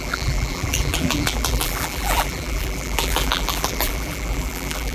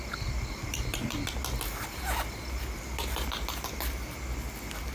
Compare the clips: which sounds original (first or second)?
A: second